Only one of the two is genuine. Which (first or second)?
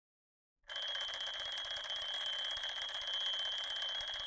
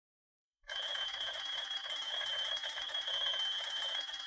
first